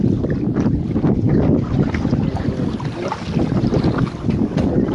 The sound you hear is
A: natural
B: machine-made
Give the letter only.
A